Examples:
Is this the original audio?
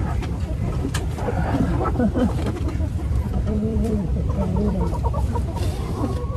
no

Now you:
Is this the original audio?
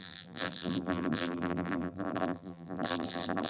no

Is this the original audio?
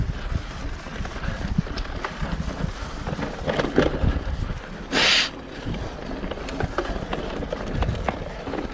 yes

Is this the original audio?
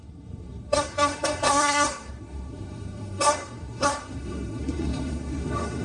no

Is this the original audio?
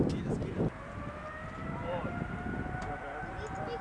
yes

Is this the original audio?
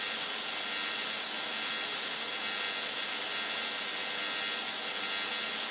yes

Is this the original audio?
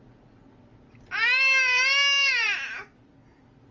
yes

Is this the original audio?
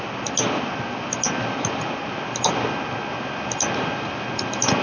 yes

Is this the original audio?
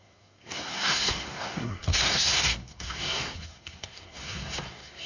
no